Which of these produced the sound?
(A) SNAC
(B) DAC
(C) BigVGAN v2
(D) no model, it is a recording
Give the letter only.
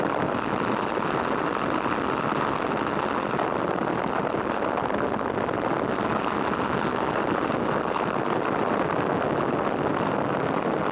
D